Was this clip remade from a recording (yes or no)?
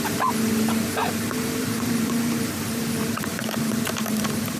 yes